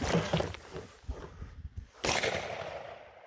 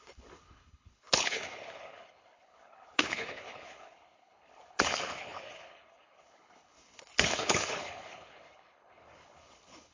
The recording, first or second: first